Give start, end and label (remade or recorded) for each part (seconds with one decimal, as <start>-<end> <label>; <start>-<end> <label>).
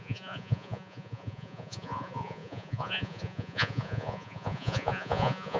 0.0-5.6 remade